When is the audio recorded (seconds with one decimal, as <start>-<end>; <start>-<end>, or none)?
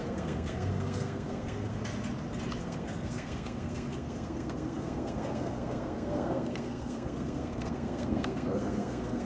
1.8-2.6